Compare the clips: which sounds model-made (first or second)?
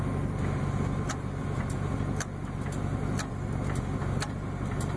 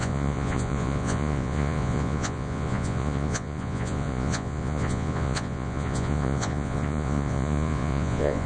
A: second